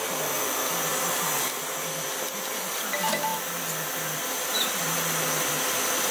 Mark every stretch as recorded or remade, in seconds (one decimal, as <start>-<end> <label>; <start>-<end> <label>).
0.0-6.1 recorded

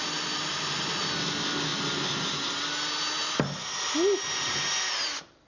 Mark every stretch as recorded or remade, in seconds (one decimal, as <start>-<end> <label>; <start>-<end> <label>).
0.0-5.5 recorded

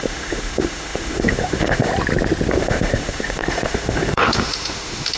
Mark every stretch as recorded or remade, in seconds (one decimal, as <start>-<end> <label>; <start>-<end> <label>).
0.0-1.9 remade; 1.9-2.5 recorded; 2.5-5.2 remade

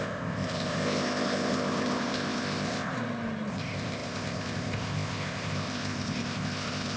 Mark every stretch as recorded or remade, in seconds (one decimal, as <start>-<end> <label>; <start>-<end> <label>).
0.0-2.9 remade; 2.9-3.5 recorded; 3.5-7.0 remade

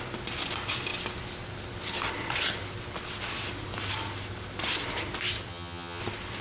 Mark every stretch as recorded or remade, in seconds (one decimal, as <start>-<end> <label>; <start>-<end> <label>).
0.0-5.5 recorded; 5.5-6.0 remade; 6.0-6.4 recorded

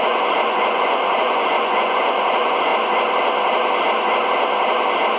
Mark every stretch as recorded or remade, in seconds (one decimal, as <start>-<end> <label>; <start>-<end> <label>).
0.0-2.7 remade; 2.7-5.2 recorded